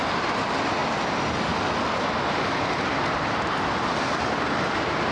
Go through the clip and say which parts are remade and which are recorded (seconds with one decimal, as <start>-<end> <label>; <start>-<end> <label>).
0.0-5.1 recorded